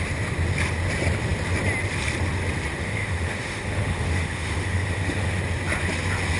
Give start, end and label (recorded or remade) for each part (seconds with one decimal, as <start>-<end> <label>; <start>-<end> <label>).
0.0-2.8 recorded; 2.8-5.4 remade; 5.4-6.4 recorded